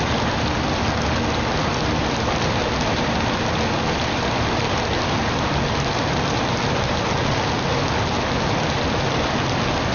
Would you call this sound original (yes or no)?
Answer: yes